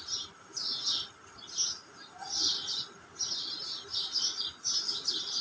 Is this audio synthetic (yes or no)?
no